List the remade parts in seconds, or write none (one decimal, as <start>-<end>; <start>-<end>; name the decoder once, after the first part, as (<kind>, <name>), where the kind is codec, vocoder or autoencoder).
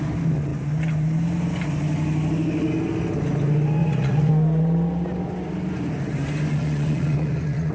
3.8-4.3 (vocoder, Vocos); 6.5-7.7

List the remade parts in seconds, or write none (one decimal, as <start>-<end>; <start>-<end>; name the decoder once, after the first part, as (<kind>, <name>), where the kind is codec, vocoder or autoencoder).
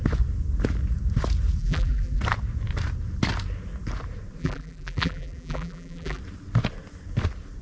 1.6-2.2 (vocoder, BigVGAN v2); 4.4-6.2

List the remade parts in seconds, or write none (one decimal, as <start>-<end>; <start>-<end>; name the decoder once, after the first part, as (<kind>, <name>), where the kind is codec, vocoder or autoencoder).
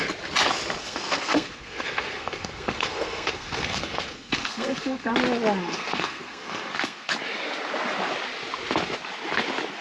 0.8-5.1 (codec, SNAC); 5.6-7.1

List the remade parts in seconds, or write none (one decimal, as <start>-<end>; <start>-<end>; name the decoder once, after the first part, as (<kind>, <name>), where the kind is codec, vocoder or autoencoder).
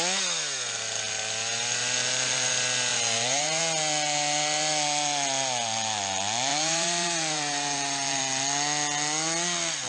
1.8-2.5 (vocoder, BigVGAN v2); 2.9-3.6; 6.5-8.2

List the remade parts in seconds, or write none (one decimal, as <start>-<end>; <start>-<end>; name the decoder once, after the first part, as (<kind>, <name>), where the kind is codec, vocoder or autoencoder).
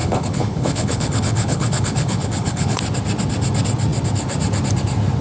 0.0-2.8 (codec, HILCodec)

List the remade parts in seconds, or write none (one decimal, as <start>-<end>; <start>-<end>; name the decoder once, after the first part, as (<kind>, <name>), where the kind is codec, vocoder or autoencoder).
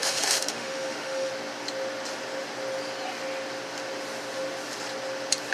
0.0-1.3 (autoencoder, DAC-VAE)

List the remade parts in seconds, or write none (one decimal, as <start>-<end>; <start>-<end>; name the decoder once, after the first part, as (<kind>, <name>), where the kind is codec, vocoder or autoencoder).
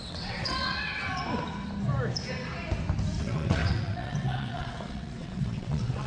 0.0-1.2 (vocoder, WaveNeXt); 3.2-6.1